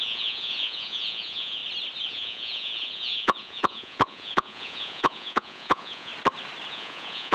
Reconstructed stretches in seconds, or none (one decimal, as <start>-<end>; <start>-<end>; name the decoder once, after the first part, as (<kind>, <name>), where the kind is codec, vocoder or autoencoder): 0.0-1.6 (vocoder, Vocos); 2.1-6.1; 6.7-7.3